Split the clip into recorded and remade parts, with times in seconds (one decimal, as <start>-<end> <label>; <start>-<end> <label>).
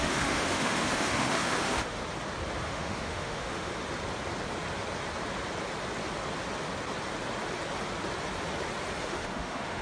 0.0-2.0 remade; 2.0-2.6 recorded; 2.6-3.7 remade; 3.7-9.0 recorded; 9.0-9.8 remade